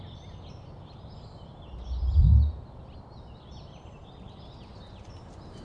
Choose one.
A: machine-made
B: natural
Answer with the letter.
B